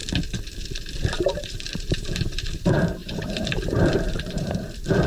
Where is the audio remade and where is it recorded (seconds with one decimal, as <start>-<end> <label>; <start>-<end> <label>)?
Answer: 0.0-0.9 recorded; 0.9-5.1 remade